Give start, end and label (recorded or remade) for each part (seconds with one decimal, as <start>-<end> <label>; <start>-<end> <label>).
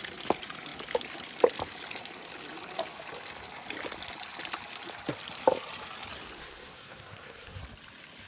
0.0-6.4 recorded; 6.4-7.6 remade; 7.6-8.3 recorded